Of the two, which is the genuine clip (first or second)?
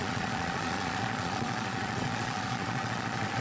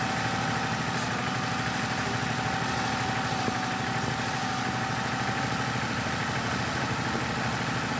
second